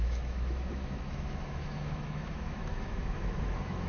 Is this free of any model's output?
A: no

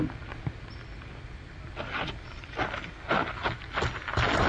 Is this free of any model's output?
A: yes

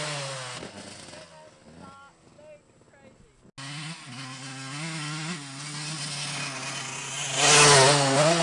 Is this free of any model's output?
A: yes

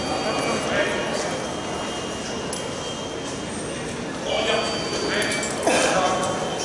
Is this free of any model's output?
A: yes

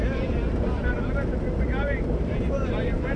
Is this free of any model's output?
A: no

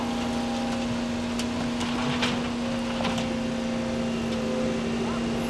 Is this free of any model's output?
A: yes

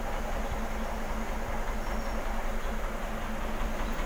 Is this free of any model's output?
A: yes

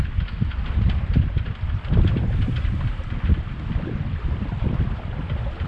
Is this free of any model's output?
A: yes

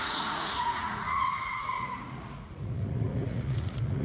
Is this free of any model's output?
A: no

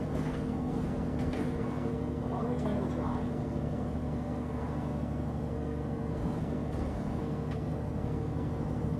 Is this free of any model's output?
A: no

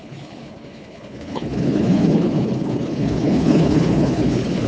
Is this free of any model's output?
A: no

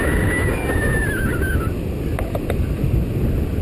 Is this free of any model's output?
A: yes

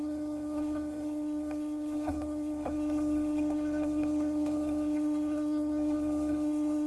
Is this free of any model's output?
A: no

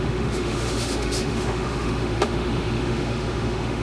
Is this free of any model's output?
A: no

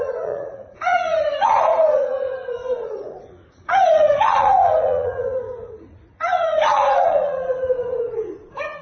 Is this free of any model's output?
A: no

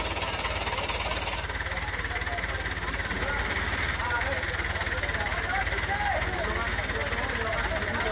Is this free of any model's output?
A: yes